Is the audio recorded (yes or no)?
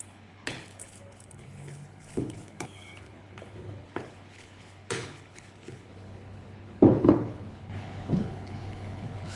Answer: no